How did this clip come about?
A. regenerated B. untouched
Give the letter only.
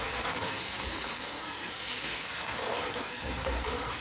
A